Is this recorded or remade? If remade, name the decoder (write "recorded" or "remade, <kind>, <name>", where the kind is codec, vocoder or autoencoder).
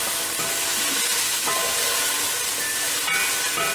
recorded